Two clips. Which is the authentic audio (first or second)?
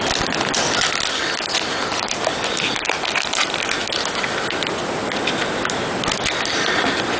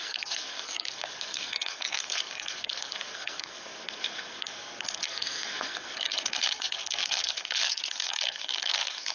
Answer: first